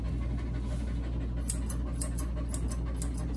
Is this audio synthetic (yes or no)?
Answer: no